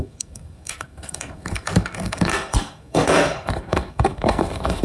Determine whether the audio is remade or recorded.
remade